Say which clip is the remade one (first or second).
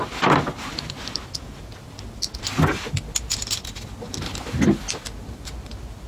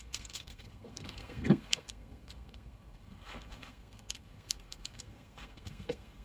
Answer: second